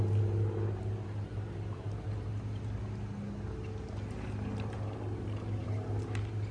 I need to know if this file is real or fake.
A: real